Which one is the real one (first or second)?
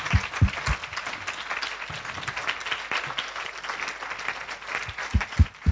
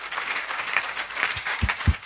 first